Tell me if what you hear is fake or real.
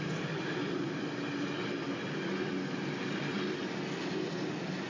real